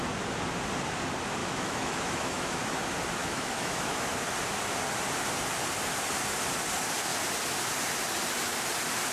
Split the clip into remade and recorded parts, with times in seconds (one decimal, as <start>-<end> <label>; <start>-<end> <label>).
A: 0.0-1.4 recorded; 1.4-2.6 remade; 2.6-3.2 recorded; 3.2-4.1 remade; 4.1-9.1 recorded